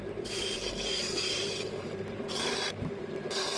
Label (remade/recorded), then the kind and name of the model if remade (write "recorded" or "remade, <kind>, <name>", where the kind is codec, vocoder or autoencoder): remade, vocoder, BigVGAN v2